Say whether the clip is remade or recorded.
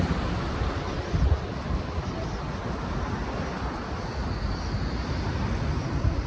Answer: recorded